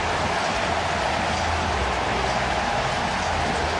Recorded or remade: recorded